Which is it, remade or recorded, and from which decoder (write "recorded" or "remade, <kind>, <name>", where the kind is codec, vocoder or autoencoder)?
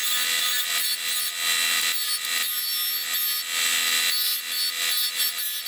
recorded